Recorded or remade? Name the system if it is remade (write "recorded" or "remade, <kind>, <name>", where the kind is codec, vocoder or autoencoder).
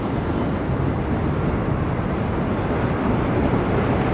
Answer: recorded